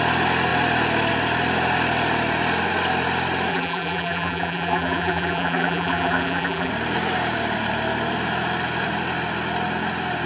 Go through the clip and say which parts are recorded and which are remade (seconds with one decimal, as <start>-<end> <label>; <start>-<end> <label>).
0.0-3.5 recorded; 3.5-6.7 remade; 6.7-10.3 recorded